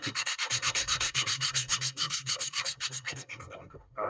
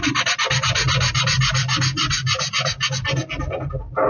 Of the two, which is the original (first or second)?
second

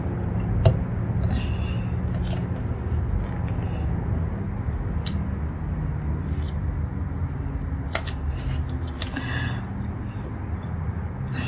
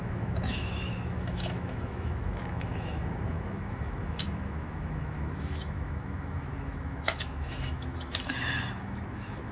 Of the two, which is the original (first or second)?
first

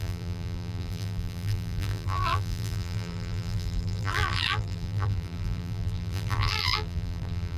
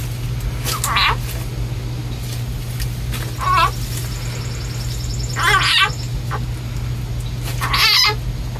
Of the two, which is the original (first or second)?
second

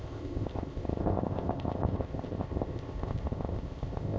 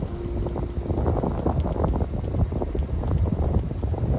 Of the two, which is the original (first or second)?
second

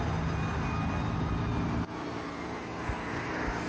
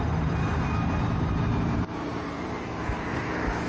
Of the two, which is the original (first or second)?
first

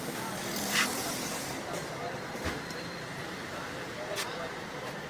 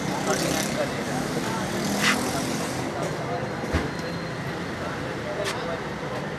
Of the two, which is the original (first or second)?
second